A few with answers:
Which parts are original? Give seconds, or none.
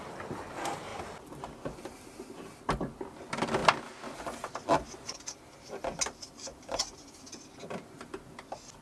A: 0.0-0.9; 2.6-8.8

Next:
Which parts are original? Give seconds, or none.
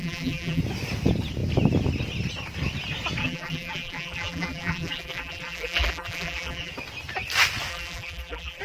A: 0.6-3.2; 6.7-7.7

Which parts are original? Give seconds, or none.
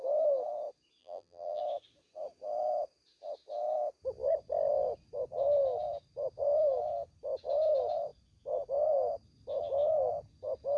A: 0.0-1.0; 1.6-10.8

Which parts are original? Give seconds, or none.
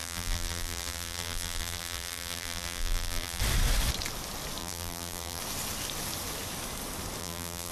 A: 3.4-4.6; 5.4-7.2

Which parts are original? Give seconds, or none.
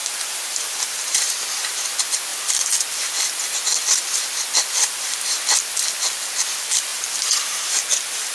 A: 1.3-6.9; 7.7-8.3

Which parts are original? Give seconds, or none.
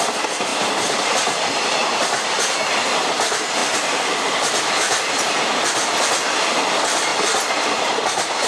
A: 0.0-0.5; 2.5-7.1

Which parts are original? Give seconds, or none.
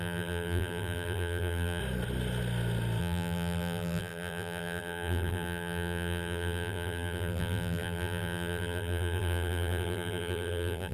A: 1.8-3.0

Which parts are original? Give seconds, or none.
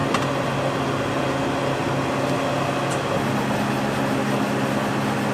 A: 0.0-5.3